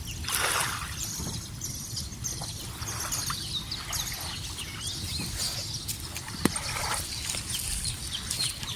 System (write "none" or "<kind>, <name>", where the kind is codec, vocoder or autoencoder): none